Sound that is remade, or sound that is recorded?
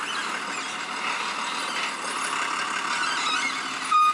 recorded